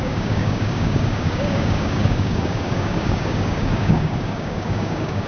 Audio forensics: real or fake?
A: fake